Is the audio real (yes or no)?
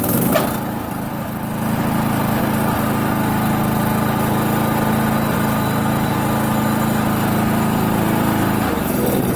yes